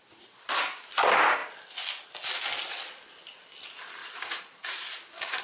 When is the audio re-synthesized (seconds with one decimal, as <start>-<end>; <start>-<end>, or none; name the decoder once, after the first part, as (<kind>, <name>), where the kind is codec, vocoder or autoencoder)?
4.0-5.4 (vocoder, BigVGAN v2)